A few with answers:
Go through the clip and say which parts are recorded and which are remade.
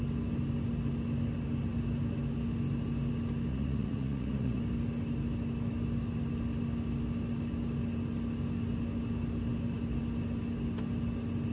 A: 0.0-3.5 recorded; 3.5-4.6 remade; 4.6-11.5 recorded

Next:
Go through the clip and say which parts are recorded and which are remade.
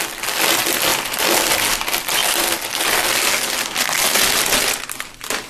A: 0.0-0.9 recorded; 0.9-1.7 remade; 1.7-5.5 recorded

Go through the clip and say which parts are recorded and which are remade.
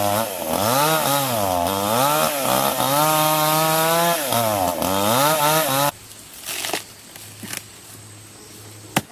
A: 0.0-9.1 recorded